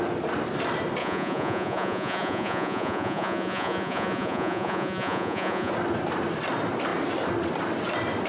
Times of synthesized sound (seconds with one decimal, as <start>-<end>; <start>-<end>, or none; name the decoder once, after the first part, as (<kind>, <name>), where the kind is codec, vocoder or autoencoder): 1.0-5.7 (vocoder, Vocos)